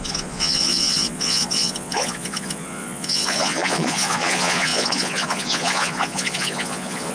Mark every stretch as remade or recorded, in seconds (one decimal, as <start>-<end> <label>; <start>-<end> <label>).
0.0-7.1 remade